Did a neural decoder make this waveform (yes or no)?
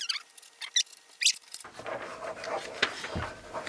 no